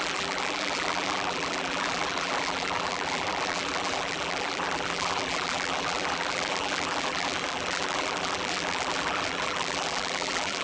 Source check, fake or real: fake